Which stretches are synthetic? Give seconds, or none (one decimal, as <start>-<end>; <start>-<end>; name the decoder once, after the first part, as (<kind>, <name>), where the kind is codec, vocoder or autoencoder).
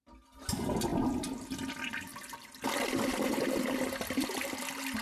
none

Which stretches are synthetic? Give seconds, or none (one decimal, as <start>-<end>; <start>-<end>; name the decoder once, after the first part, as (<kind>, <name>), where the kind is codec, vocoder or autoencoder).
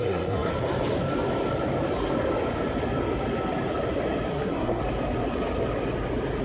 0.0-0.5 (codec, SNAC); 4.3-4.8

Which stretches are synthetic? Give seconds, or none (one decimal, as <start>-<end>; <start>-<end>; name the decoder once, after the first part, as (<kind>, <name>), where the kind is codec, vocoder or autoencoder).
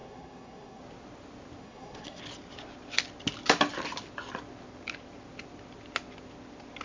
0.0-0.8 (codec, SNAC); 1.6-2.2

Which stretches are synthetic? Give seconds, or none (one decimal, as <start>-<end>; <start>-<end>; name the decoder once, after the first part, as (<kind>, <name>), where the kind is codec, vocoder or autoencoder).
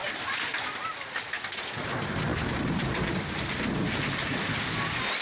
none